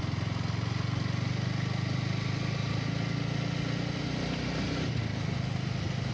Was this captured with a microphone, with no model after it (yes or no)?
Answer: yes